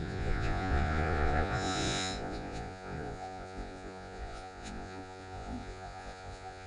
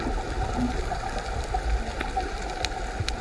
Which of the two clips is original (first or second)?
second